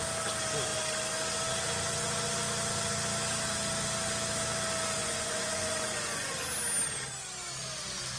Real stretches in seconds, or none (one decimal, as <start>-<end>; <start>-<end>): 0.0-5.0; 6.3-8.2